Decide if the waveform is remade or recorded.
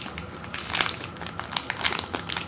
recorded